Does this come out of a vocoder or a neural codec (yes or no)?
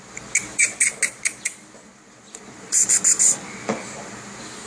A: no